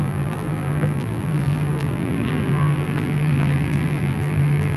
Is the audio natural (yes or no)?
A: no